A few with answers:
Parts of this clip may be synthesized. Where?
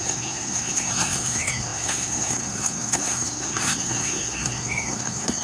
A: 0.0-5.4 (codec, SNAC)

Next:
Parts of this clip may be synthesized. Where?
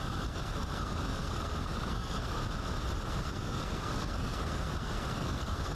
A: 0.0-2.4 (codec, SNAC); 3.1-5.7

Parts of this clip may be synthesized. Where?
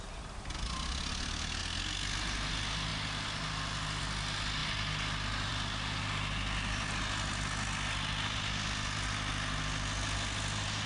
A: none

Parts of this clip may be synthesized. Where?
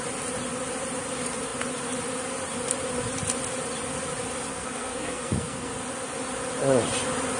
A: 4.5-5.7 (codec, SNAC)